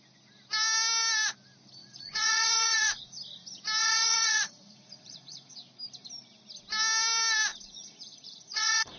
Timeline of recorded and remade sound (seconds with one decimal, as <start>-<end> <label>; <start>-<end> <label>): 0.0-1.8 recorded; 1.8-3.0 remade; 3.0-3.8 recorded; 3.8-5.5 remade; 5.5-7.5 recorded; 7.5-9.0 remade